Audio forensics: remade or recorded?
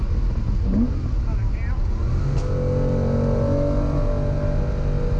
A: recorded